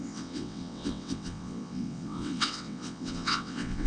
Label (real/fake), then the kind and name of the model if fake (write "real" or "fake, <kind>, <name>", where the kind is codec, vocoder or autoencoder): fake, vocoder, WaveNeXt